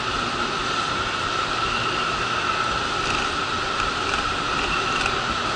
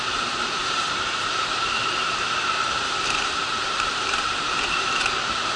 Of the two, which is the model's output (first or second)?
second